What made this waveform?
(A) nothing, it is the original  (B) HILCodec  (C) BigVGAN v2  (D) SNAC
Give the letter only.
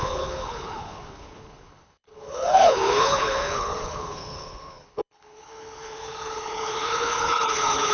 B